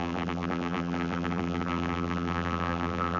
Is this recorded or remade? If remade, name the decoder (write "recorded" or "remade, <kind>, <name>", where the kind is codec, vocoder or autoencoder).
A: remade, vocoder, BigVGAN v2